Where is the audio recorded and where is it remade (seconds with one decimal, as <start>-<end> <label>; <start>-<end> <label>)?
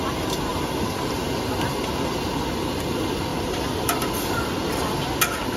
0.0-0.5 recorded; 0.5-1.0 remade; 1.0-3.3 recorded; 3.3-4.1 remade; 4.1-5.6 recorded